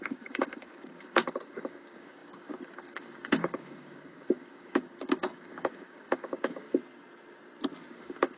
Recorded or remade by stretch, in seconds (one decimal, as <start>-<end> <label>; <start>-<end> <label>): 0.0-6.8 remade; 6.8-7.8 recorded; 7.8-8.4 remade